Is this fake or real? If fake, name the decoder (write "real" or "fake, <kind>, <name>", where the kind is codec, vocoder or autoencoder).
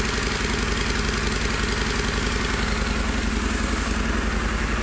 real